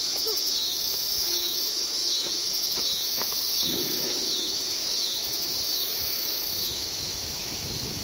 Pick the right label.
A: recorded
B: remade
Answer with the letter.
B